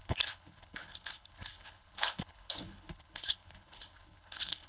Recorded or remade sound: remade